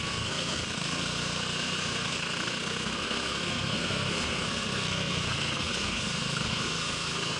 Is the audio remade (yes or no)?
yes